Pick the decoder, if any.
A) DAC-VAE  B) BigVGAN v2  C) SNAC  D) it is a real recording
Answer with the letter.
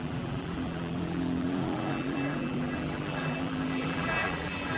B